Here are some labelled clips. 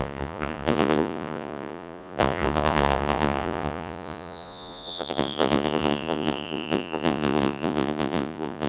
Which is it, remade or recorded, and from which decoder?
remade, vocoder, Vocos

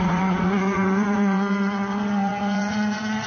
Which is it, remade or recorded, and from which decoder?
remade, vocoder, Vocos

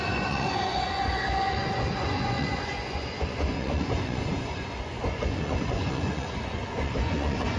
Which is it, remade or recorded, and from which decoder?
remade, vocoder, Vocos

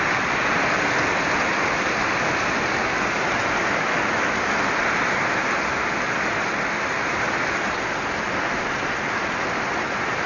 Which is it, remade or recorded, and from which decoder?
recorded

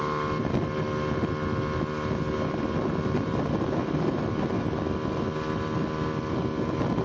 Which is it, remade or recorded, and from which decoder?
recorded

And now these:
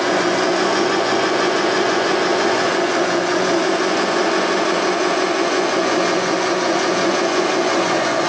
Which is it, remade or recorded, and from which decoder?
remade, vocoder, Vocos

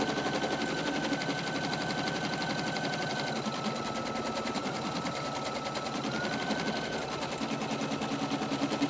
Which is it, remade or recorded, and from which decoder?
recorded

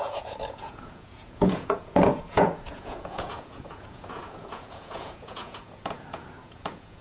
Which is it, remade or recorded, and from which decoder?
remade, vocoder, Vocos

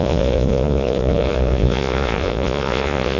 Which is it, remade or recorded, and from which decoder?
remade, vocoder, Vocos